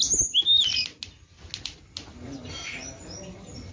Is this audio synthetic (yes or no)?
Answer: no